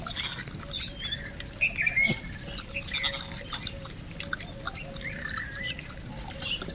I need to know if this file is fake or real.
real